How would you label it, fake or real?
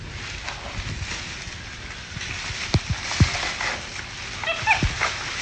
real